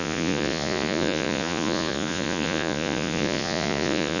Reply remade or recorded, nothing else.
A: remade